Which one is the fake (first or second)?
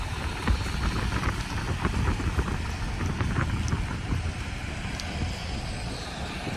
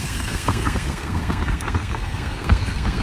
second